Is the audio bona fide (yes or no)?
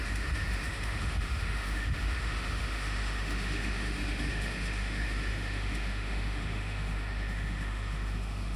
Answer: no